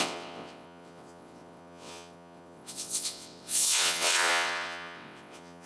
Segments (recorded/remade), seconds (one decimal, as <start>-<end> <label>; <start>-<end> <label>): 0.0-5.7 remade